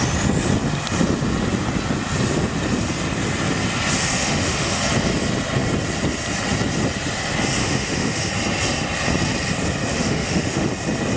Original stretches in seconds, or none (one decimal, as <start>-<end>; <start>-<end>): 0.0-4.2; 4.8-7.6; 8.3-9.9; 10.7-11.2